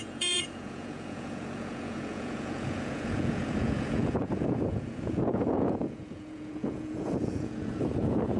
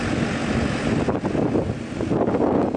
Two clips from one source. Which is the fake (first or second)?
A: first